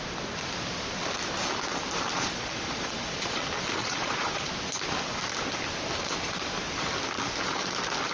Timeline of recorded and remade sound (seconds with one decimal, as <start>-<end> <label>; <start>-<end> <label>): 0.0-2.1 recorded; 2.1-3.4 remade; 3.4-3.8 recorded; 3.8-4.5 remade; 4.5-8.1 recorded